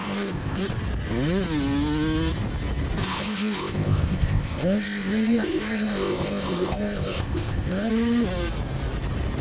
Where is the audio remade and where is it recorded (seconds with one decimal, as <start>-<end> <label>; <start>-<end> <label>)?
0.0-0.6 remade; 0.6-3.0 recorded; 3.0-7.9 remade; 7.9-9.4 recorded